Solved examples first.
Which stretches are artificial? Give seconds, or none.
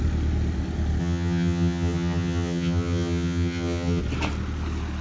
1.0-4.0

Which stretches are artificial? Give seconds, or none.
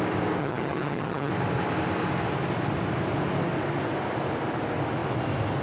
0.4-1.3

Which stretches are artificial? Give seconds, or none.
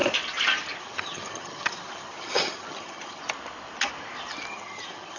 0.8-3.2; 4.5-5.2